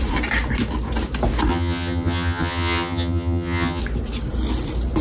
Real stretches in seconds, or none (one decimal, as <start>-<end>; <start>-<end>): 0.0-1.5; 3.8-5.0